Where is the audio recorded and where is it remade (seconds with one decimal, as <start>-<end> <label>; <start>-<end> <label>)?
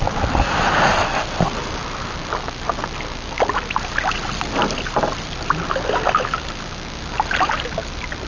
0.0-8.3 recorded